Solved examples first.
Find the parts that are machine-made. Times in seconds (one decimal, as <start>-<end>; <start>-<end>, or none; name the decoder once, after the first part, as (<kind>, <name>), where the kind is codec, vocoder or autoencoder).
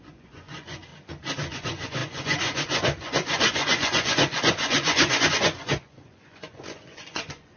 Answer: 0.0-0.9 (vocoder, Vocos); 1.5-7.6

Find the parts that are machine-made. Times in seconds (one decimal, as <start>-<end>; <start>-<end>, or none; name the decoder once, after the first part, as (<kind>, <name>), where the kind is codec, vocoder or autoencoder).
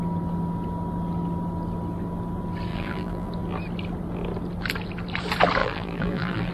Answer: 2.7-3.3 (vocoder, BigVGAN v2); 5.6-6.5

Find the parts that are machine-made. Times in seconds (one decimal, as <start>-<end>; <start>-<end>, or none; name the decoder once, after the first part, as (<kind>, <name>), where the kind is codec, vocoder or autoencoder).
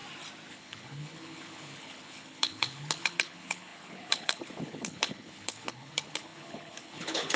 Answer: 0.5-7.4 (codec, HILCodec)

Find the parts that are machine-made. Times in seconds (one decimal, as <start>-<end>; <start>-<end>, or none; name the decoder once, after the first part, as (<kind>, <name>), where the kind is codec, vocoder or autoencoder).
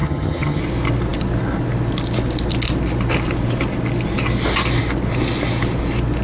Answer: 0.0-0.6 (vocoder, HiFi-GAN)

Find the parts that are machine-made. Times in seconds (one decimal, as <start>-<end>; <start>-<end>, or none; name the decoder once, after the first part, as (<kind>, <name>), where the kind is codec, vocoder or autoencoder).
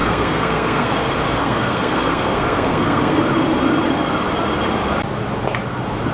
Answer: 0.0-0.9 (codec, SNAC); 1.4-3.2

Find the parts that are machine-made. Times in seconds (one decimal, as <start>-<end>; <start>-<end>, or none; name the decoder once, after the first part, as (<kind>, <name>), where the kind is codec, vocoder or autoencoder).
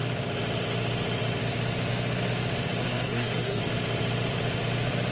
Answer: 2.8-3.6 (codec, SNAC)